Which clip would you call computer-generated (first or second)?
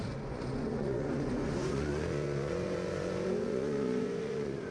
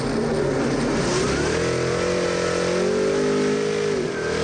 first